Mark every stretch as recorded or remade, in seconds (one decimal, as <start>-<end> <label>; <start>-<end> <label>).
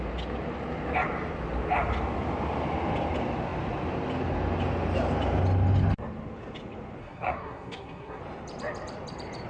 0.0-7.0 recorded; 7.0-8.2 remade; 8.2-9.5 recorded